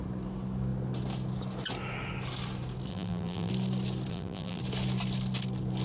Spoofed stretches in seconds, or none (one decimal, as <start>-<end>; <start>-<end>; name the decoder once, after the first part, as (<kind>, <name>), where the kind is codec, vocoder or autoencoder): 2.9-3.5 (vocoder, BigVGAN v2); 4.1-4.6